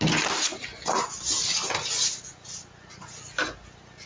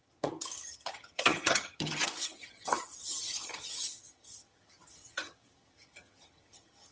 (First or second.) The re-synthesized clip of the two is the second